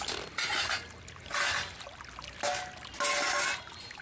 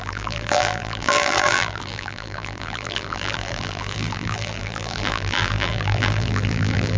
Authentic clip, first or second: first